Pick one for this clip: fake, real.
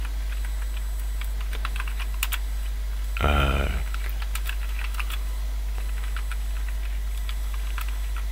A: real